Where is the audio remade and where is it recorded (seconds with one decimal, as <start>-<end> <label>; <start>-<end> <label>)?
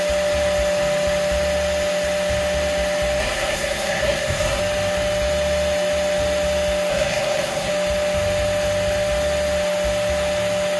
0.0-3.2 recorded; 3.2-4.6 remade; 4.6-6.9 recorded; 6.9-7.7 remade; 7.7-10.8 recorded